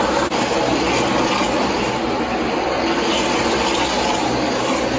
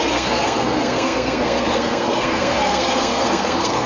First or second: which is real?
first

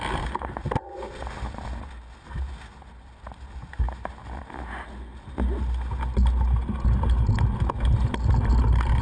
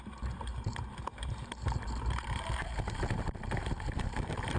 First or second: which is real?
first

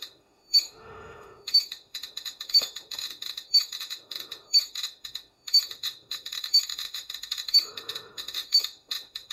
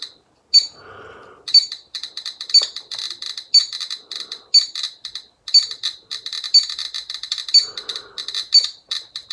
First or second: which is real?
second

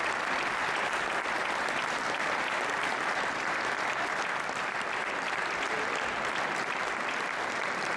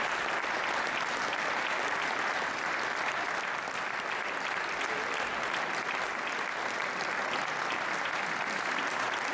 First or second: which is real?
second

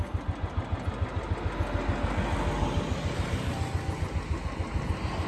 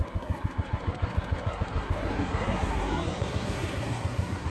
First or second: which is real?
first